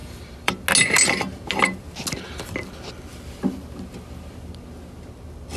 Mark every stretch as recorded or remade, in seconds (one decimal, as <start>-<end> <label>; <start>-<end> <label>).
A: 0.0-0.5 remade; 0.5-5.6 recorded